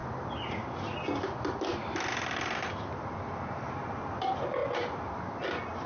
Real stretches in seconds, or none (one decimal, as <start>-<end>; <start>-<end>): 0.0-2.9; 4.6-5.9

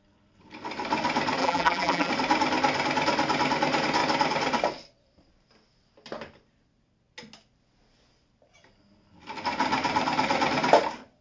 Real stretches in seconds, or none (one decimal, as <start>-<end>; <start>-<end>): 0.0-1.4; 2.1-11.2

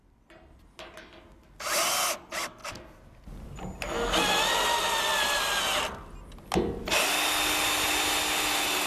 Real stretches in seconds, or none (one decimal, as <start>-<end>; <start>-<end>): 0.0-8.9

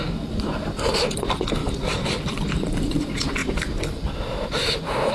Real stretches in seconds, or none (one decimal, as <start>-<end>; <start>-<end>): 3.4-5.1

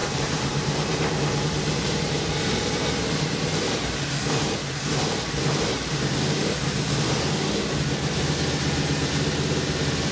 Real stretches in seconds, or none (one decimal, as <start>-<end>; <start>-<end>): 2.2-10.1